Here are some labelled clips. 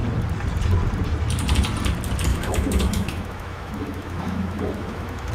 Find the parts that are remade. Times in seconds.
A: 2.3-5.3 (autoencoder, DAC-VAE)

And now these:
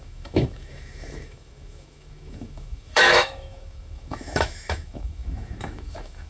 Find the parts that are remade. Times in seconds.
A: 0.0-6.3 (autoencoder, DAC-VAE)

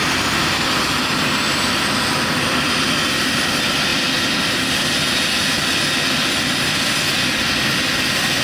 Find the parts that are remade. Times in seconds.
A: none

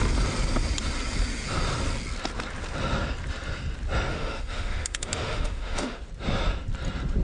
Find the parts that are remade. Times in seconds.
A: 4.1-6.0 (autoencoder, DAC-VAE)

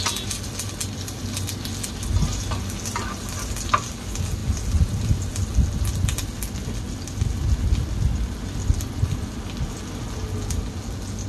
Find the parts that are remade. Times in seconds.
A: none

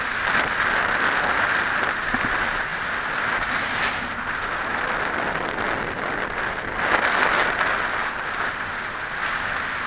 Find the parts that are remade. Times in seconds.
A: none

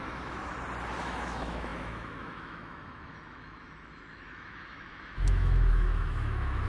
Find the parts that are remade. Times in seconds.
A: 0.0-0.5 (autoencoder, DAC-VAE); 1.0-6.7

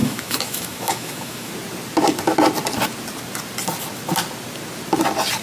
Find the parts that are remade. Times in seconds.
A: 0.0-1.5 (autoencoder, DAC-VAE)